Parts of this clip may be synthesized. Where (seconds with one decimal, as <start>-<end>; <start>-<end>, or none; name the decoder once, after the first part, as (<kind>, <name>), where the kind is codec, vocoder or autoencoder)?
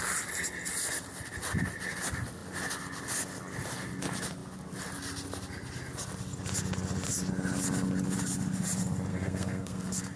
9.1-10.2 (codec, SNAC)